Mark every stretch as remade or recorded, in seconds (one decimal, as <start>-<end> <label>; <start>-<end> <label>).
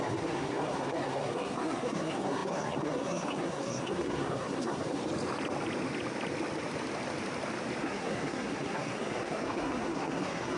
0.0-5.0 remade; 5.0-7.8 recorded; 7.8-10.6 remade